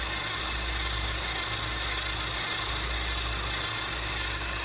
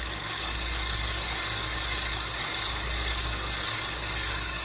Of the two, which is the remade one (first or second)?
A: second